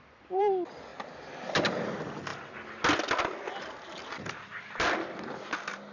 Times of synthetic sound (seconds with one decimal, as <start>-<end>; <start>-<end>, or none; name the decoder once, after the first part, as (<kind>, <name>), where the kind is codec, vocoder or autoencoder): 0.0-0.9 (vocoder, BigVGAN v2); 1.7-2.3; 4.3-5.9